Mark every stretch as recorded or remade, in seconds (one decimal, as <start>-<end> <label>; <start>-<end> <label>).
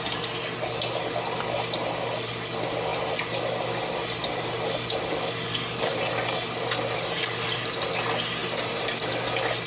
0.0-9.7 recorded